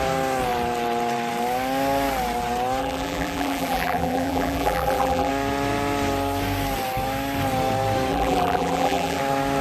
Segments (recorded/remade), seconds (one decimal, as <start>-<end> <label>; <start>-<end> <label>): 0.0-2.8 recorded; 2.8-5.3 remade; 5.3-8.1 recorded; 8.1-9.2 remade; 9.2-9.6 recorded